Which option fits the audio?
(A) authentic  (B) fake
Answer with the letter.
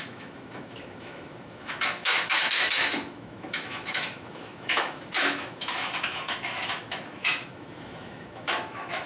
B